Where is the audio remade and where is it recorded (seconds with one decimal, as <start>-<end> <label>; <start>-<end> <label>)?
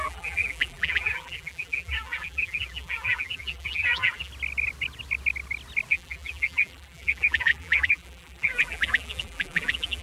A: 0.0-4.3 remade; 4.3-5.9 recorded; 5.9-10.0 remade